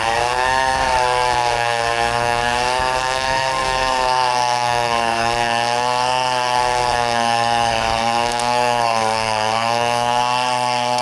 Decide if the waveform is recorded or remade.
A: remade